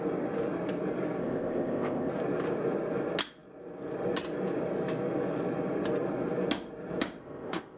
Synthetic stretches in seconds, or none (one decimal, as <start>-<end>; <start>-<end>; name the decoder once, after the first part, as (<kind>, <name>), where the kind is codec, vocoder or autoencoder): 1.2-2.1 (codec, ZipCodec); 7.2-7.8